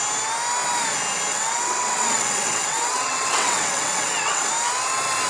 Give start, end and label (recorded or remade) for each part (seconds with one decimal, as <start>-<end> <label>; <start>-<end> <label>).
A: 0.0-1.3 recorded; 1.3-4.5 remade; 4.5-5.3 recorded